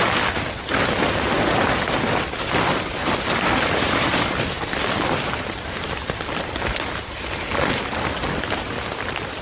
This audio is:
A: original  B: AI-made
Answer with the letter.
A